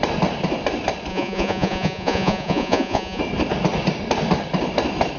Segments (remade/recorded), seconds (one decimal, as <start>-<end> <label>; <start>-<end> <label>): 0.0-1.1 recorded; 1.1-3.2 remade; 3.2-5.2 recorded